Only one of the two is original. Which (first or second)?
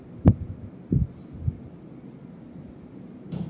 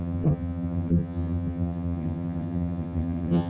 first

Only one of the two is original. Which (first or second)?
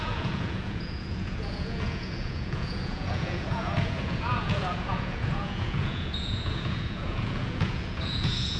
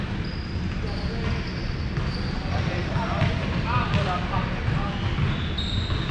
second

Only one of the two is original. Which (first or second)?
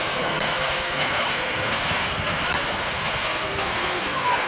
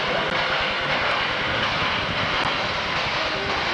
second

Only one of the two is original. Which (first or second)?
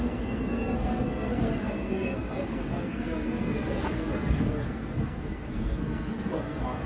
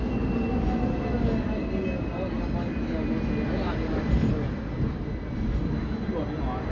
second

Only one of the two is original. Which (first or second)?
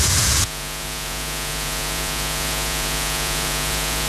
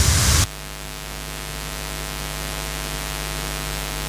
second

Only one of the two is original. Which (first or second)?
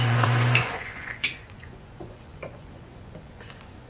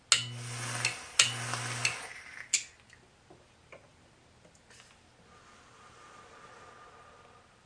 second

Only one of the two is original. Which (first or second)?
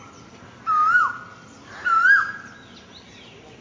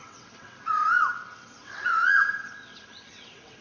first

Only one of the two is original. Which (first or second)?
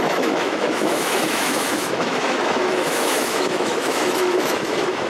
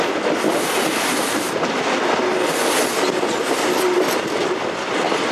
second